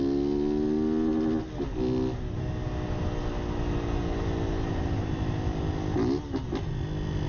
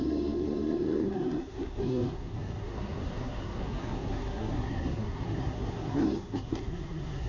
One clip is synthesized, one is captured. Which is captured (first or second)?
first